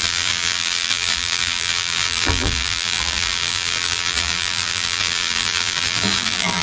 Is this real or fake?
fake